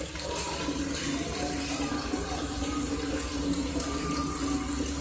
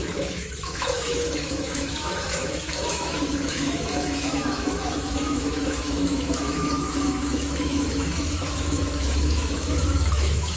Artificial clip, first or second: second